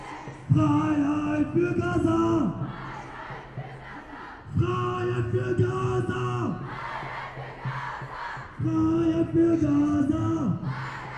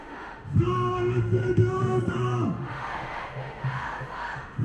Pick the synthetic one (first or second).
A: second